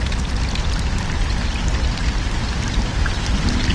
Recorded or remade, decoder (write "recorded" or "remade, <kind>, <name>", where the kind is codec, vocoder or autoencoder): recorded